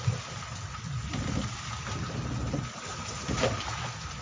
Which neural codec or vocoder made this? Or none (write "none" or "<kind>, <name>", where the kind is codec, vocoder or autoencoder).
none